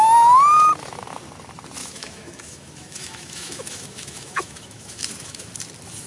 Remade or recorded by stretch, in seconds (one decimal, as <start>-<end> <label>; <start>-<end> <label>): 0.0-1.8 recorded; 1.8-5.5 remade; 5.5-6.1 recorded